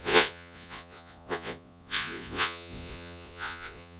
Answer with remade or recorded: remade